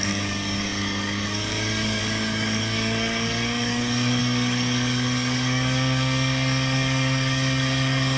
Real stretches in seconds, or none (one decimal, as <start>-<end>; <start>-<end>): none